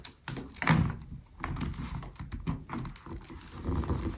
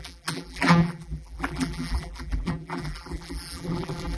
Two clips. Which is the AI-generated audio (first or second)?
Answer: second